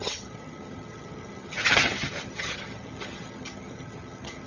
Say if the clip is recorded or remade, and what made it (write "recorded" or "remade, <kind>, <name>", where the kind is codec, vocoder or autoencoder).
remade, vocoder, HiFi-GAN